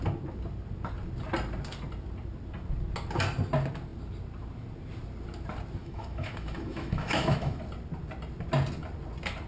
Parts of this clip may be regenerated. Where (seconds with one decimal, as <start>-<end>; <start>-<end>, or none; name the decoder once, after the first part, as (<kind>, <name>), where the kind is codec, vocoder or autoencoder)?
5.8-7.6 (autoencoder, DAC-VAE)